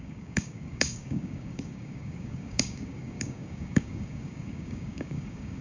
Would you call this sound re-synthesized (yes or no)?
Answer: yes